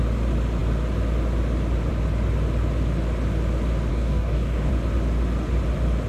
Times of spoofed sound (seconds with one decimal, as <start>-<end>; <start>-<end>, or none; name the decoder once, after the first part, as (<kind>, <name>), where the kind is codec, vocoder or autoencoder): 3.9-4.7 (codec, DAC)